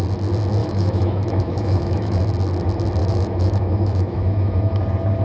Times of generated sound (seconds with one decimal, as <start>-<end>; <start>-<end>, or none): 0.6-2.2; 3.0-4.8